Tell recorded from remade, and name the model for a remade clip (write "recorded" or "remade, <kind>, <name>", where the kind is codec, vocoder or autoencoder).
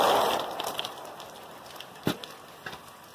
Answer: recorded